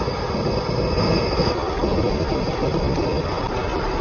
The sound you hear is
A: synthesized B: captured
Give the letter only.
B